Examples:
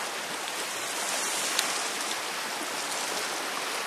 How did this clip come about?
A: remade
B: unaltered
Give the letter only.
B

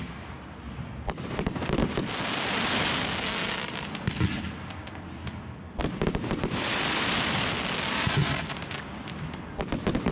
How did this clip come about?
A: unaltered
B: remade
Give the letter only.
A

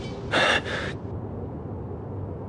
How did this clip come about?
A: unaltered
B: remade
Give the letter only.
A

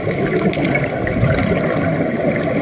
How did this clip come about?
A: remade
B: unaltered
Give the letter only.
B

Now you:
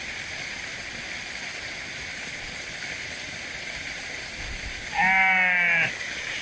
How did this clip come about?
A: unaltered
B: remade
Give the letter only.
A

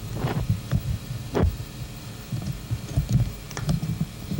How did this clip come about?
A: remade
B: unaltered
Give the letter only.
A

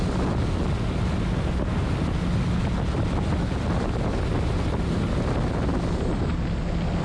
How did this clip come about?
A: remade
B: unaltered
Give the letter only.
B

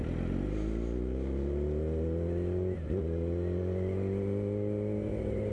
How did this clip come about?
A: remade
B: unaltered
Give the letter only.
B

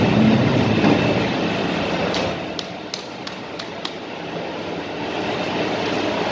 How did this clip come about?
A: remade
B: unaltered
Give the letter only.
B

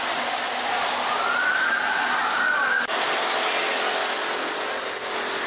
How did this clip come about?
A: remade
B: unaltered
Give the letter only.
B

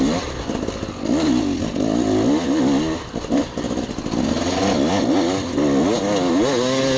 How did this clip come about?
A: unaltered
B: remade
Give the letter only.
A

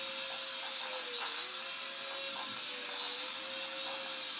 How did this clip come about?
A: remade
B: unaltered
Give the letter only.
B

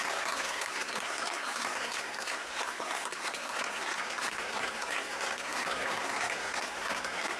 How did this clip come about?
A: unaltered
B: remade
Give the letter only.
B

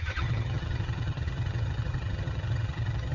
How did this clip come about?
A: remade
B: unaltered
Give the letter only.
A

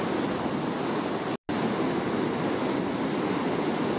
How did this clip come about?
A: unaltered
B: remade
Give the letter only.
A